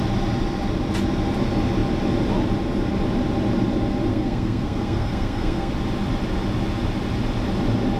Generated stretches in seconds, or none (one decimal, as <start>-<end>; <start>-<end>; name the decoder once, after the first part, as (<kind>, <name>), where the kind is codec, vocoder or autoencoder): 4.1-5.7 (codec, SNAC)